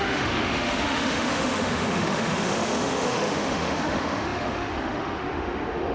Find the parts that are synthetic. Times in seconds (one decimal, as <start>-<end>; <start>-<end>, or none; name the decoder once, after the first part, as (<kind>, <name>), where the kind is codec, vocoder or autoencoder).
0.0-5.9 (autoencoder, DAC-VAE)

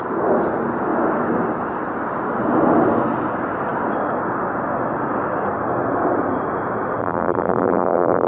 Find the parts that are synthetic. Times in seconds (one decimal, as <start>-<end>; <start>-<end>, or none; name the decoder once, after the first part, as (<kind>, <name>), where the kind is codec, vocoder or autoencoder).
7.0-8.3 (vocoder, BigVGAN v2)